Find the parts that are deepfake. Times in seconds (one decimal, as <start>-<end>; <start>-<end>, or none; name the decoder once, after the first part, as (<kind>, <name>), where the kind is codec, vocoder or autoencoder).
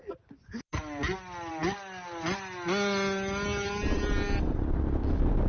none